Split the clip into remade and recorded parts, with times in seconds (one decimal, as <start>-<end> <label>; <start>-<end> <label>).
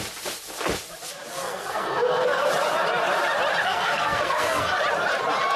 0.0-1.3 recorded; 1.3-2.5 remade; 2.5-3.6 recorded; 3.6-4.8 remade; 4.8-5.6 recorded